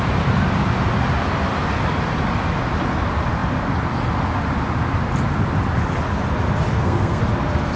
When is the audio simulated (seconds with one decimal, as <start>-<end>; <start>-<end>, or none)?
6.7-7.2